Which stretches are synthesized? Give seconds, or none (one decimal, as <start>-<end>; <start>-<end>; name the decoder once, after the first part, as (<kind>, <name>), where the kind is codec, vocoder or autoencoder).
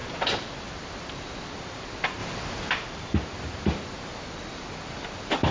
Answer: none